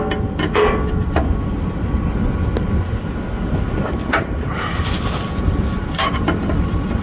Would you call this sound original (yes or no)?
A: yes